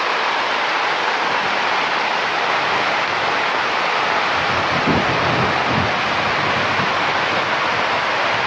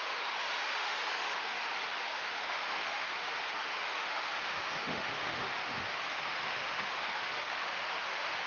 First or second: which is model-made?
second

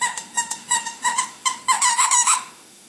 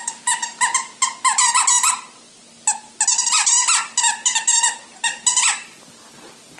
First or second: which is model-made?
first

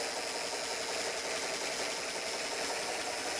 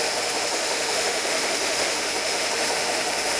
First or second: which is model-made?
second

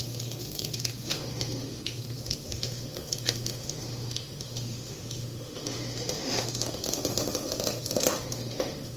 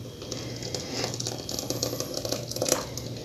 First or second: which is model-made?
first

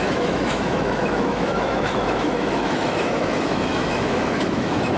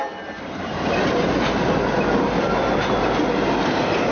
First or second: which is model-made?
first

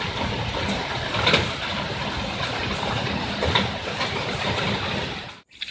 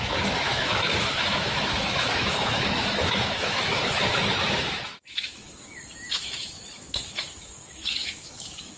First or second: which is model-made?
second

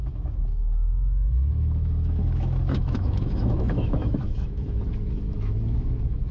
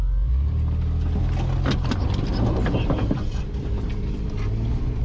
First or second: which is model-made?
first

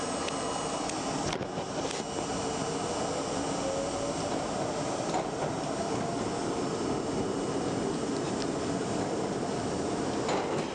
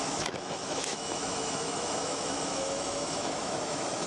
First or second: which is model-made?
second